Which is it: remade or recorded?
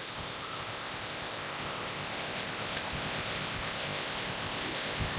remade